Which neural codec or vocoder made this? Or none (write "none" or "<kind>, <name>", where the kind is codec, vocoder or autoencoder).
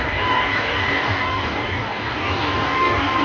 codec, DAC